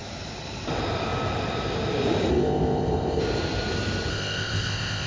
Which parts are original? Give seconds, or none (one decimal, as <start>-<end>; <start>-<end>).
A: 0.0-2.3; 3.2-4.1